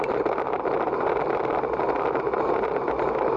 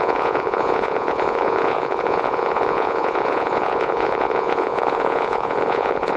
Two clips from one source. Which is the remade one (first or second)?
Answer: second